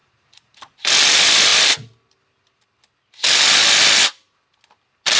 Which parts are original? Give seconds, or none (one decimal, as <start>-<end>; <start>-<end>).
0.0-5.2